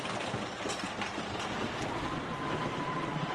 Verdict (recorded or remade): recorded